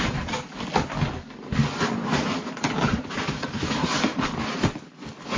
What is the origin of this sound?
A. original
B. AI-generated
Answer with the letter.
A